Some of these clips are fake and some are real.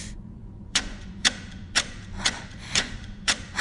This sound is fake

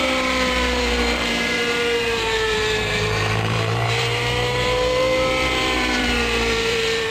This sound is fake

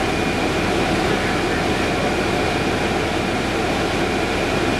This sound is real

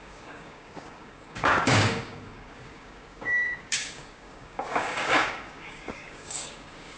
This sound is fake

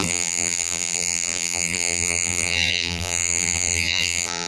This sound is fake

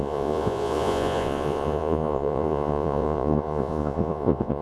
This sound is fake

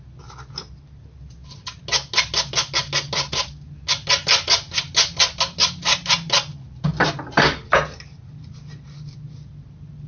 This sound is real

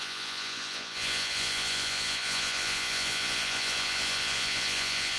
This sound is fake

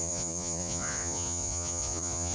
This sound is fake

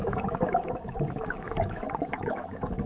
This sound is fake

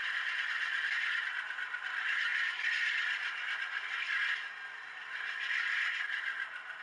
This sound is real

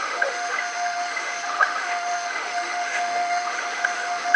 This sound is fake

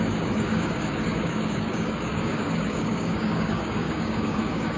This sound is fake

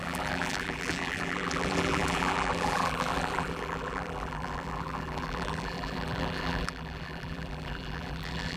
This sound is fake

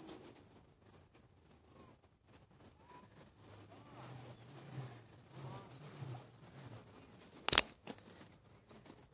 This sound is real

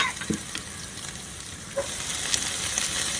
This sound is real